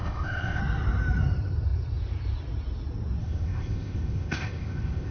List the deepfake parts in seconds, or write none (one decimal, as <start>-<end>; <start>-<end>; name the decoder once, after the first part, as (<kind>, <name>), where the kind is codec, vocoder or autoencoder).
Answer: 0.0-0.6 (codec, ZipCodec); 3.2-5.1